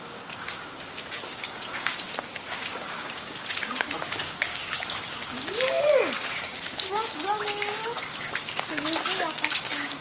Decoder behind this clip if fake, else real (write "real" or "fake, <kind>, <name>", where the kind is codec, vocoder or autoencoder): fake, codec, DAC